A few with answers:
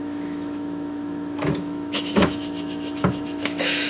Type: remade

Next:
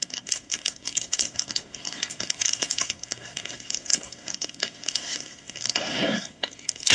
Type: remade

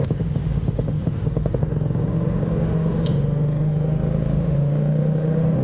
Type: remade